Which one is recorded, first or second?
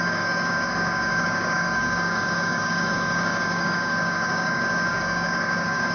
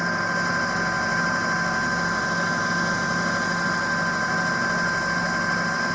second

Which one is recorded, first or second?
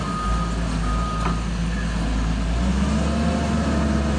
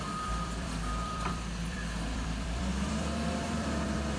first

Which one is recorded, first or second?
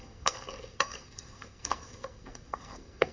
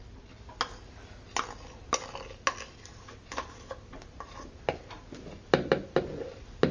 second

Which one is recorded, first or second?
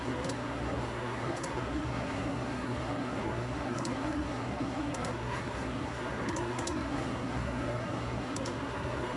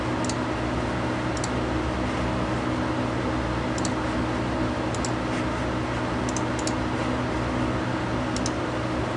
second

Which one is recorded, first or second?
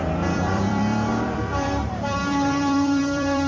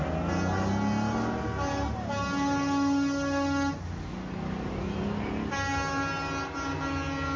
second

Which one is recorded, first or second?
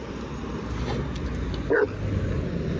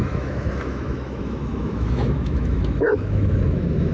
first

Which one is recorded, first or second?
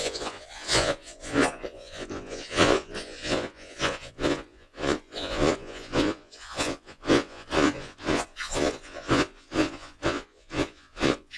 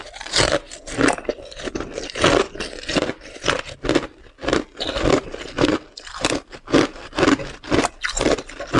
second